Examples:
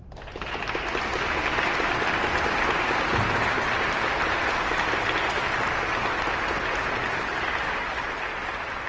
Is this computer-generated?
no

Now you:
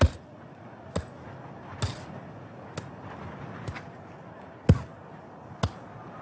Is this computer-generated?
no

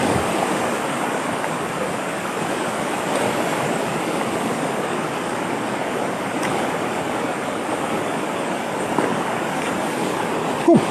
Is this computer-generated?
yes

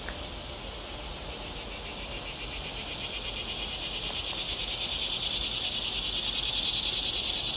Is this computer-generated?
no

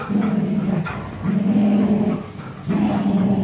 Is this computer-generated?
no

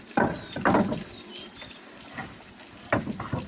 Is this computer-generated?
no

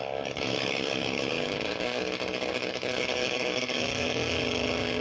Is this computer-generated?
yes